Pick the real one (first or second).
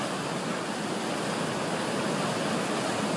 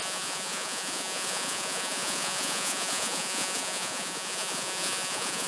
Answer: first